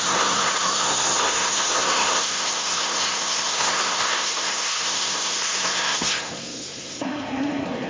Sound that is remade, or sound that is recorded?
remade